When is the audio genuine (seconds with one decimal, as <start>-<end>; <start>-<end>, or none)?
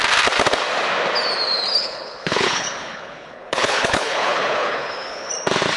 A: 0.0-1.8; 5.3-5.8